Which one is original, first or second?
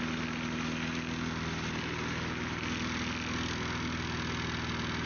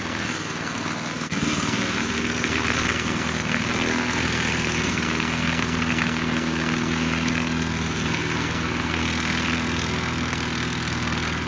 first